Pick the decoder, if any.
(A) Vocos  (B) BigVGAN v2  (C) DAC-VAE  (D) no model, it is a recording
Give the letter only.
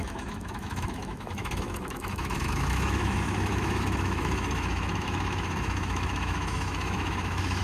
C